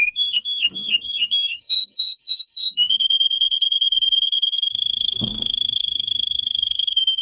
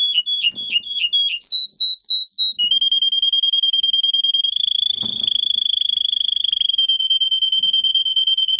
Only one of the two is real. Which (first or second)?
second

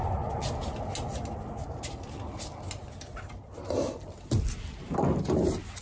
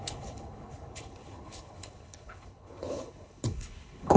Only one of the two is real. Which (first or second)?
first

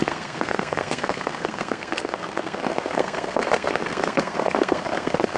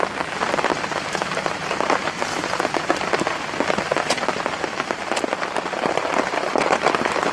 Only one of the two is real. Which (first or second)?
second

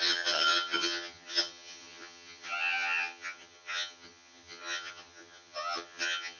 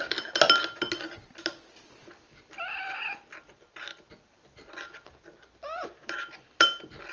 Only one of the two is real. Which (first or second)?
second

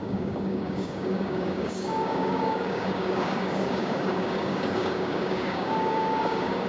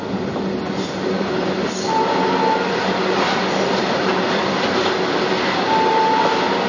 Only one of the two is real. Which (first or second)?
second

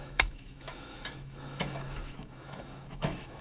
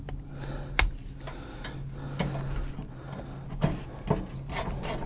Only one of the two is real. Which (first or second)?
second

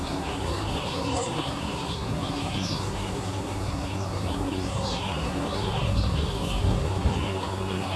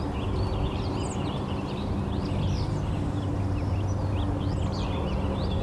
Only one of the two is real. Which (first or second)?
second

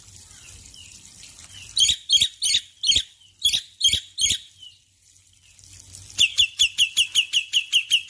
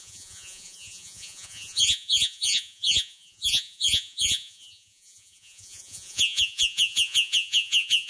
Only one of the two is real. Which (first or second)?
first